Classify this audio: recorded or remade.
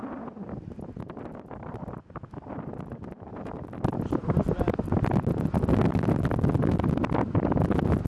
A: recorded